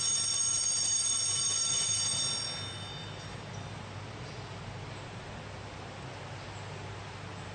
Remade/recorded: recorded